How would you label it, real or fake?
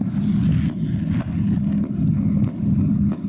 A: real